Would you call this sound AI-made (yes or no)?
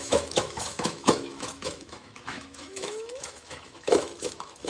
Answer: yes